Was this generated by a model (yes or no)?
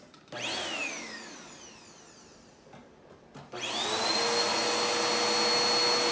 no